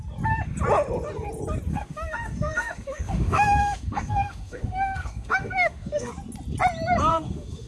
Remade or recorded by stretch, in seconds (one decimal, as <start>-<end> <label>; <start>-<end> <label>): 0.0-1.7 recorded; 1.7-6.1 remade; 6.1-7.1 recorded; 7.1-7.7 remade